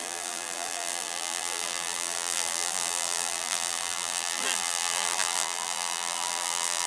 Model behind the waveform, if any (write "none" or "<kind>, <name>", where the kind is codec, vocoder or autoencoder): vocoder, BigVGAN v2